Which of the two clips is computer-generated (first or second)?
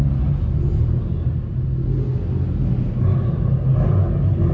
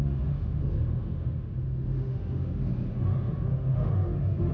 second